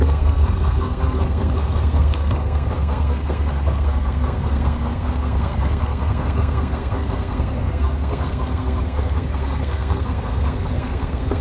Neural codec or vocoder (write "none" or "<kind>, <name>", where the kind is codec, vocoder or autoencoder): codec, SNAC